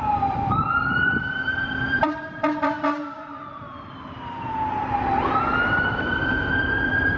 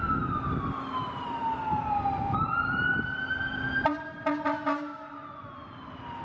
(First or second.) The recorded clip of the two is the second